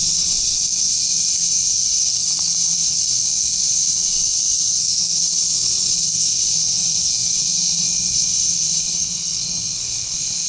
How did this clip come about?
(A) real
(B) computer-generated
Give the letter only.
B